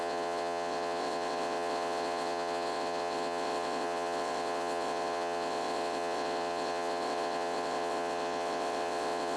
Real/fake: fake